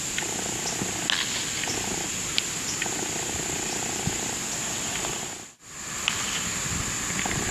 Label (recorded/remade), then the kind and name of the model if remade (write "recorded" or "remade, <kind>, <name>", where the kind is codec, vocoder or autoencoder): recorded